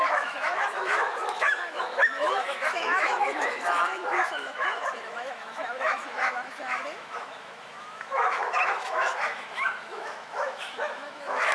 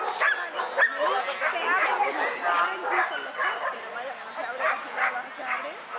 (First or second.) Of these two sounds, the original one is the second